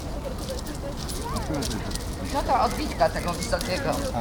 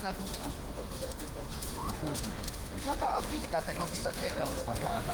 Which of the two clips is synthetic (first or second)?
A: second